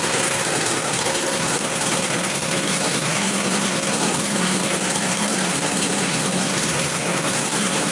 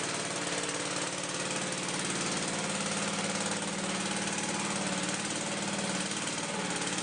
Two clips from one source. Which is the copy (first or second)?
first